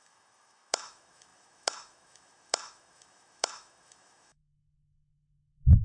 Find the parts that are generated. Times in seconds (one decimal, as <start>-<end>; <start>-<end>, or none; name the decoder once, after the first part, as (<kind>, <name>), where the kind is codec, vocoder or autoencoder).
0.0-5.8 (autoencoder, DAC-VAE)